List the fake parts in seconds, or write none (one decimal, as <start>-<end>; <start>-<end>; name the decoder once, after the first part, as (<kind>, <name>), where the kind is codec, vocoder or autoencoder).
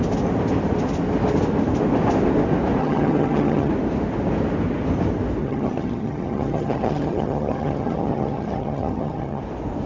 2.8-3.7 (vocoder, HiFi-GAN); 5.4-9.4